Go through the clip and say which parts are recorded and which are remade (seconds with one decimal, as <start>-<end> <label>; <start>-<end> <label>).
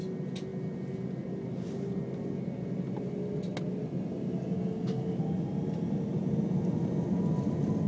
0.0-7.9 recorded